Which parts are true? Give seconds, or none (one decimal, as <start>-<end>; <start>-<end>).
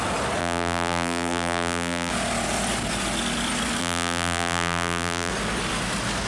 0.0-0.4; 2.1-3.8; 5.3-6.3